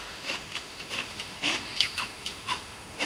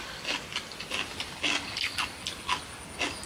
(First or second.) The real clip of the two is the second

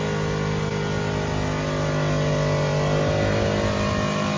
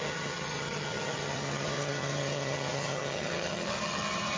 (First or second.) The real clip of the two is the first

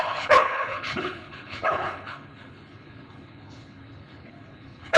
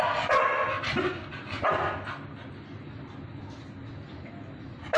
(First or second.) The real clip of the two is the second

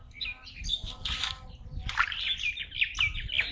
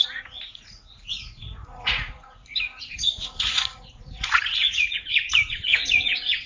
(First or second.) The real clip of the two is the first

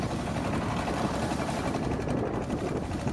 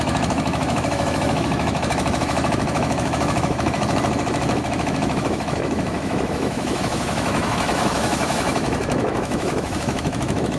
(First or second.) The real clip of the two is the first